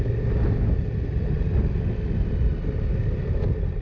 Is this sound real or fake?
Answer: real